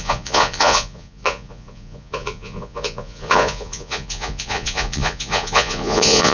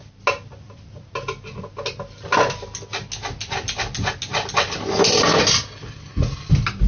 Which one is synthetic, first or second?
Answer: first